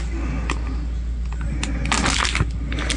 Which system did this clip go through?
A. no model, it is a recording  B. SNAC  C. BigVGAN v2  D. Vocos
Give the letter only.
A